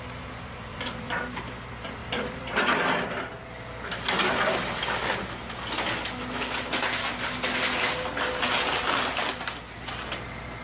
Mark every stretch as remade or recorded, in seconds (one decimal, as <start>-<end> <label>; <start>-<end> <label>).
0.0-0.7 recorded; 0.7-1.4 remade; 1.4-2.0 recorded; 2.0-2.6 remade; 2.6-10.6 recorded